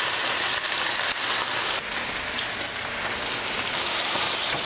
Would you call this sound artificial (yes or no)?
no